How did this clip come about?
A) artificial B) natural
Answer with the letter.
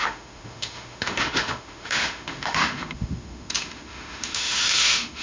A